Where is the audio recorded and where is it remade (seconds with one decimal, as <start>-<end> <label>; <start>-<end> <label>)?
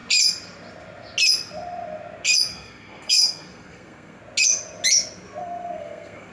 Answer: 0.0-2.5 recorded; 2.5-4.2 remade; 4.2-5.4 recorded; 5.4-6.3 remade